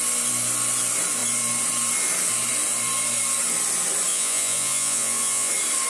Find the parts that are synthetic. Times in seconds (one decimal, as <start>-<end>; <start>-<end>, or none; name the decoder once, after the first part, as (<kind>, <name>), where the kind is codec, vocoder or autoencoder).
4.1-5.5 (vocoder, Vocos)